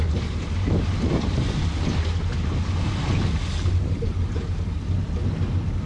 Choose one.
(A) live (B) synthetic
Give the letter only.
A